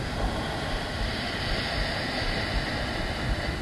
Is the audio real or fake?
real